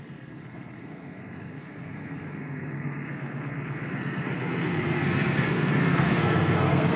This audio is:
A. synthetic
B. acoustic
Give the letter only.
A